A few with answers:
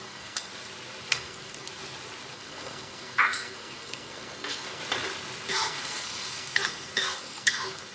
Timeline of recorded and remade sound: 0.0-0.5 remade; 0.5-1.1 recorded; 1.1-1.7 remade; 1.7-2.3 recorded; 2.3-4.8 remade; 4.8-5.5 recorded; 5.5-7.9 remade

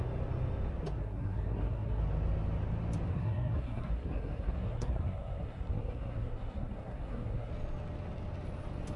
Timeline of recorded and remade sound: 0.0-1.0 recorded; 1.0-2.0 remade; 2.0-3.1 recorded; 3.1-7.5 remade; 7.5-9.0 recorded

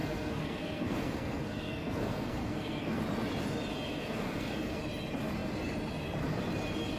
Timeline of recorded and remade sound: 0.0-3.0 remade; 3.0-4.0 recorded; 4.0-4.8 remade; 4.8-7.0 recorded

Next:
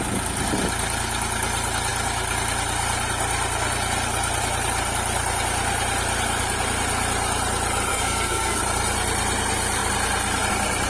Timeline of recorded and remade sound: 0.0-7.9 recorded; 7.9-8.6 remade; 8.6-10.9 recorded

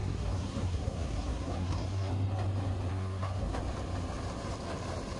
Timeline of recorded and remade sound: 0.0-2.1 remade; 2.1-2.9 recorded; 2.9-3.6 remade; 3.6-5.2 recorded